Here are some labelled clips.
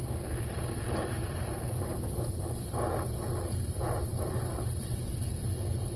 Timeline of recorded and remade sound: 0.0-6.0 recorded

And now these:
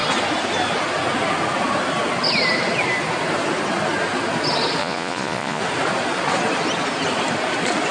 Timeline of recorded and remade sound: 0.0-4.8 recorded; 4.8-5.6 remade; 5.6-7.9 recorded

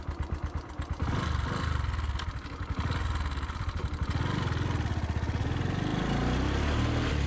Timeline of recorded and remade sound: 0.0-7.3 recorded

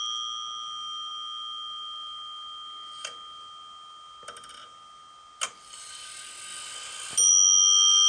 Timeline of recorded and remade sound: 0.0-8.1 recorded

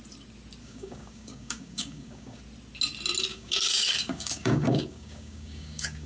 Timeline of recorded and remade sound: 0.0-0.6 recorded; 0.6-2.4 remade; 2.4-3.3 recorded; 3.3-6.1 remade

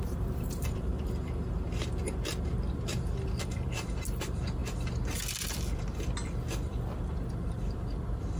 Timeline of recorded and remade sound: 0.0-0.9 remade; 0.9-3.4 recorded; 3.4-4.6 remade; 4.6-8.4 recorded

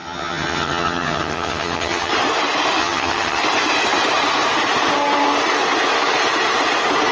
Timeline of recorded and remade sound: 0.0-2.1 remade; 2.1-2.8 recorded; 2.8-3.4 remade; 3.4-7.1 recorded

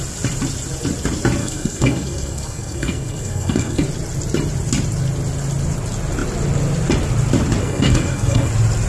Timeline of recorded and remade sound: 0.0-1.4 recorded; 1.4-3.8 remade; 3.8-7.6 recorded; 7.6-8.5 remade; 8.5-8.9 recorded